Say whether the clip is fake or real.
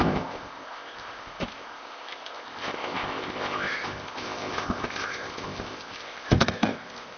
fake